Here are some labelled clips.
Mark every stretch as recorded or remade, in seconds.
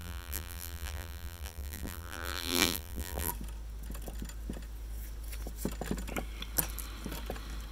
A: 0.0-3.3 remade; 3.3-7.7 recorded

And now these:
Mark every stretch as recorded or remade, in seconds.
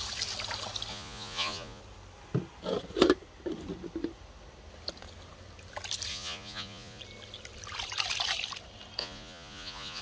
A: 0.0-0.9 recorded; 0.9-1.8 remade; 1.8-6.1 recorded; 6.1-7.0 remade; 7.0-9.0 recorded; 9.0-10.0 remade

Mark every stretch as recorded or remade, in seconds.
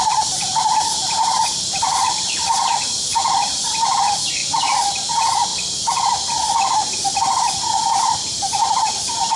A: 0.0-5.5 remade; 5.5-8.0 recorded; 8.0-9.4 remade